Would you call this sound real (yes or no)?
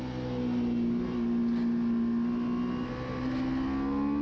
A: yes